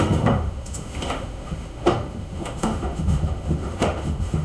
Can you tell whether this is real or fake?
fake